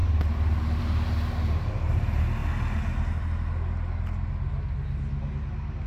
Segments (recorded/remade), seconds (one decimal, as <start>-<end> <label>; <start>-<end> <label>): 0.0-0.8 remade; 0.8-5.9 recorded